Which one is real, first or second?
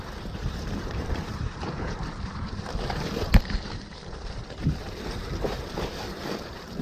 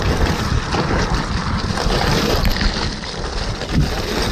second